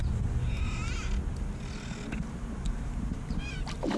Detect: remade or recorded recorded